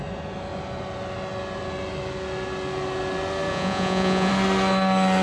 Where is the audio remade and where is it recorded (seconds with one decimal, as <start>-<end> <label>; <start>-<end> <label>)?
0.0-3.5 recorded; 3.5-4.3 remade; 4.3-5.2 recorded